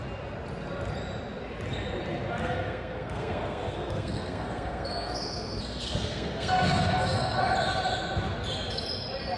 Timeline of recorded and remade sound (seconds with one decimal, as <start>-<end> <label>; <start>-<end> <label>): 0.0-2.4 recorded; 2.4-7.4 remade; 7.4-9.4 recorded